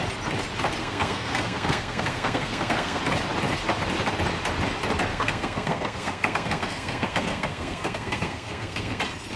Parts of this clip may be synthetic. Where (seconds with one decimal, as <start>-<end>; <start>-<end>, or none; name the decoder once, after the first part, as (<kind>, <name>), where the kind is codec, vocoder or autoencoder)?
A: 0.8-3.0 (codec, SNAC); 5.1-9.0